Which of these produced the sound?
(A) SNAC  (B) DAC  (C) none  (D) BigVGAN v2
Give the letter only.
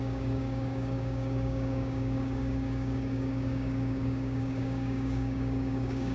B